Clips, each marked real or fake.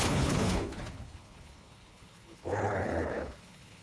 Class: fake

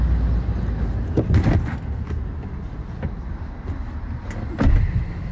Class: real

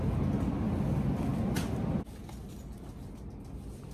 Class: real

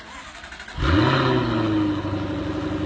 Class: real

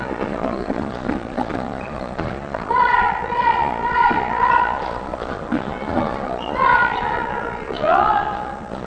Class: fake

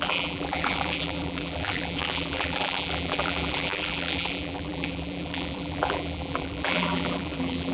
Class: fake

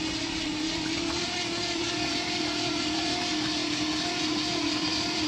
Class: fake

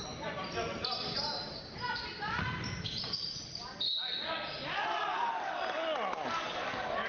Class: real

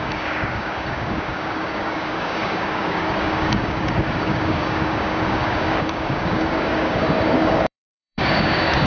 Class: fake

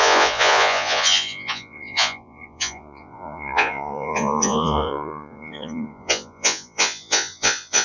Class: fake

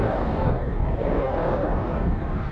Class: fake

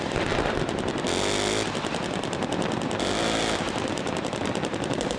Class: real